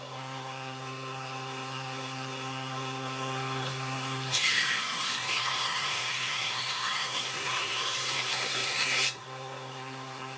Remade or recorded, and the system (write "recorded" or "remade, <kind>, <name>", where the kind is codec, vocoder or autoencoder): remade, codec, SNAC